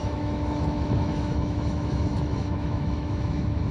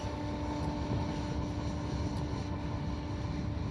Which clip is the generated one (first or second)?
first